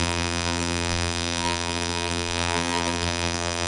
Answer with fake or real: fake